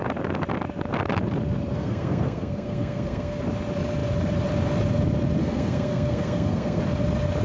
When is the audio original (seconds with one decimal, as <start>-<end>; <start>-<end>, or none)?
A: 0.0-1.7; 3.4-5.4; 6.8-7.4